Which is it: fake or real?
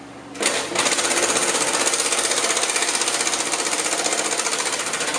real